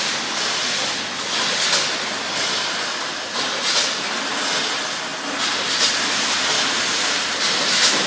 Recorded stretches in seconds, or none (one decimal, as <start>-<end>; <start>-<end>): 0.0-8.1